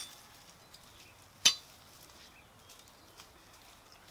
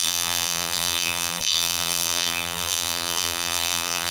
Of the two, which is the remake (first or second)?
second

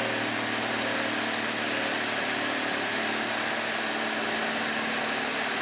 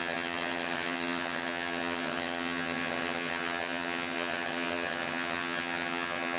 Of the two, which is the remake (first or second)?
second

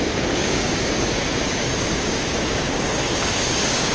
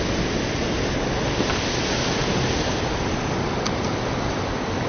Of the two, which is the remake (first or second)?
first